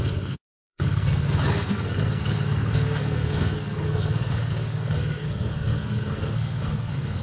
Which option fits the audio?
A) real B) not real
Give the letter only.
B